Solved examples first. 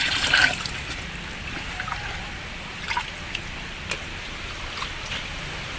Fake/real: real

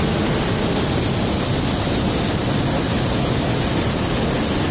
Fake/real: real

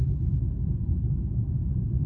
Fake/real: real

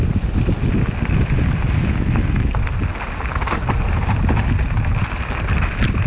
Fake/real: real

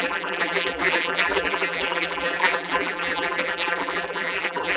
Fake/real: fake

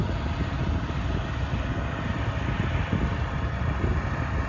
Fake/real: real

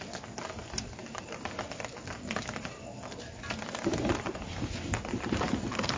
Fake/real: real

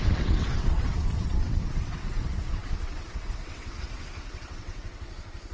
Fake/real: fake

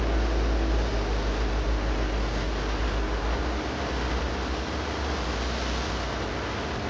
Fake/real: real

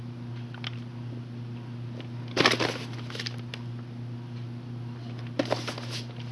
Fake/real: real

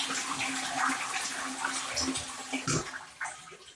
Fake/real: real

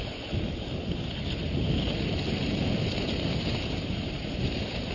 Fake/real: real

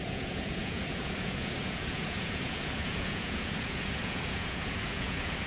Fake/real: fake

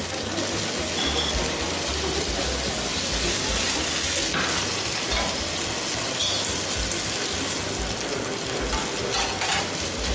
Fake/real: real